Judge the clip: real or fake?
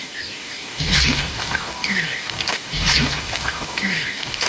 fake